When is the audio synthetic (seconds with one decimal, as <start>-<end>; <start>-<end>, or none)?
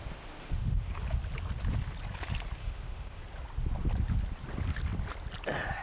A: 0.4-0.9; 2.6-3.2